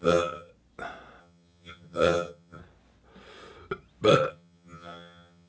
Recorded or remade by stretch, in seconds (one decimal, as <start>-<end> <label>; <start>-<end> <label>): 0.0-0.5 remade; 0.5-1.2 recorded; 1.2-2.6 remade; 2.6-4.3 recorded; 4.3-5.5 remade